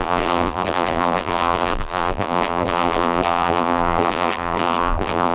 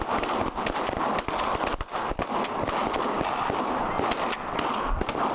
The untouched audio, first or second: second